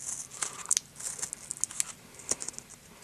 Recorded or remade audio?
recorded